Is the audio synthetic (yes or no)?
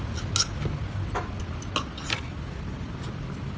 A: no